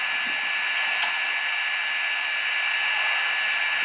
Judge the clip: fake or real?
real